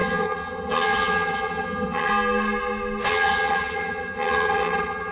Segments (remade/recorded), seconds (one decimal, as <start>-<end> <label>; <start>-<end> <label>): 0.0-2.1 remade; 2.1-3.1 recorded; 3.1-5.1 remade